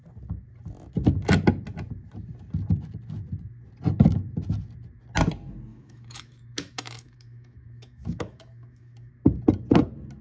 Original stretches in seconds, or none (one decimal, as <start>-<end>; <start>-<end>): 0.0-5.7; 9.1-10.2